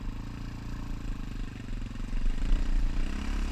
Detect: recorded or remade recorded